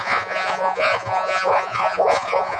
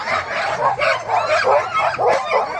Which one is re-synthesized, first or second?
first